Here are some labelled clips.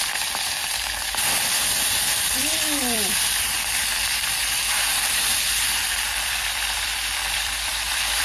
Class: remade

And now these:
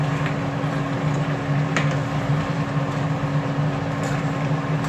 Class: recorded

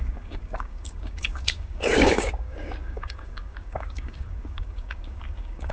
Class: remade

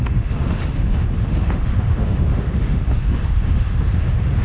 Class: remade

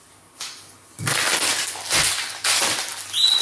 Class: recorded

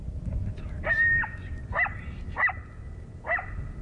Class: recorded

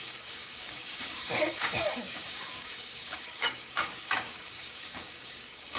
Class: remade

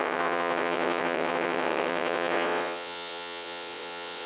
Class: remade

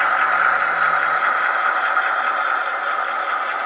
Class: recorded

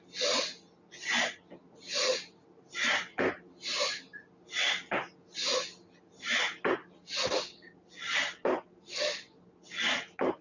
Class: recorded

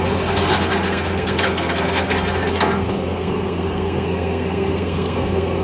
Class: remade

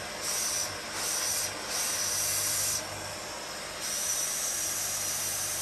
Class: recorded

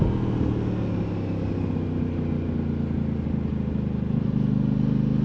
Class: recorded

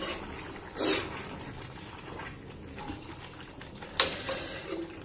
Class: remade